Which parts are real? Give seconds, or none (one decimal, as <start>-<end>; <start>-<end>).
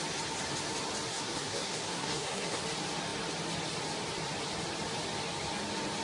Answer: 0.0-1.1; 2.6-6.0